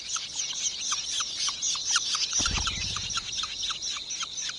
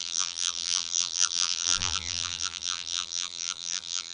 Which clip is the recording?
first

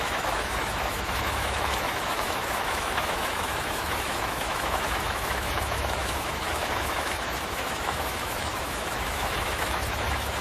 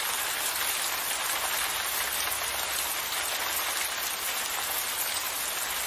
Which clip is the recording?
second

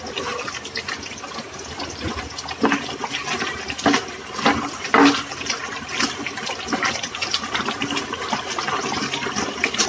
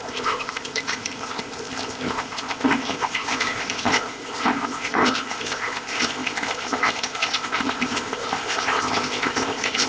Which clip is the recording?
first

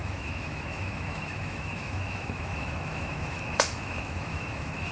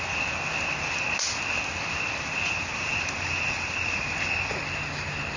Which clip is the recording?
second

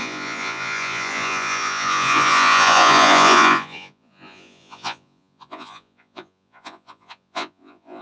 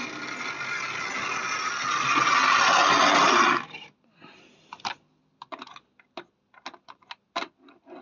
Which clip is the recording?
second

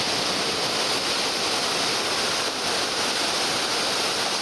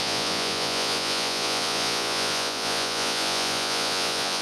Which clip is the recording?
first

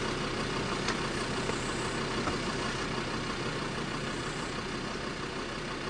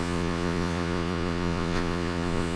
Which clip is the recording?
first